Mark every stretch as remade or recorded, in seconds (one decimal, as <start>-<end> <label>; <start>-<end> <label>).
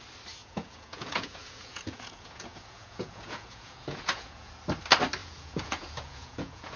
0.0-0.4 recorded; 0.4-4.5 remade; 4.5-5.2 recorded; 5.2-6.8 remade